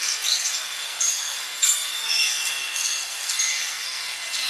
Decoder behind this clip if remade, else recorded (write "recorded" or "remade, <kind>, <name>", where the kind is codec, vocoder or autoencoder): remade, codec, SNAC